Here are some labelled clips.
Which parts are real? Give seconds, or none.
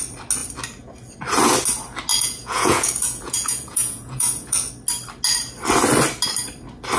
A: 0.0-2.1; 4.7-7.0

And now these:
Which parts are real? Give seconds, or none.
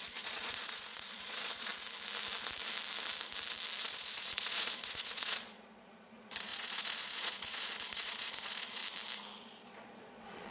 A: 1.7-3.8; 8.8-9.4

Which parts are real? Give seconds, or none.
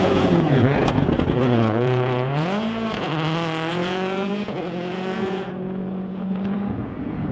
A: 3.1-3.7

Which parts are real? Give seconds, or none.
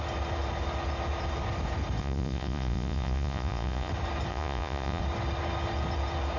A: 0.0-2.0; 3.9-4.3; 5.0-6.4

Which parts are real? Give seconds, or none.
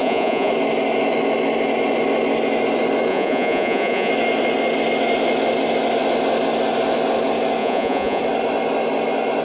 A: 0.5-3.1; 4.1-7.6; 8.2-9.4